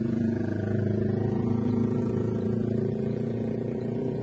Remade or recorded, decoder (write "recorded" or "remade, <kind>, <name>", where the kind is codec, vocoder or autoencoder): remade, vocoder, Vocos